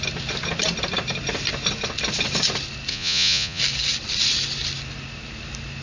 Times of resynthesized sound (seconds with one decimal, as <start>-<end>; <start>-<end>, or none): 2.9-3.6